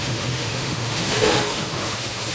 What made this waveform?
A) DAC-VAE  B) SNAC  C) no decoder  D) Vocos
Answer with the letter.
A